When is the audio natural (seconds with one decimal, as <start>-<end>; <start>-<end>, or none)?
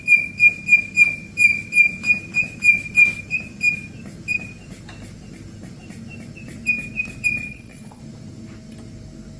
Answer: 0.0-7.4; 8.0-9.4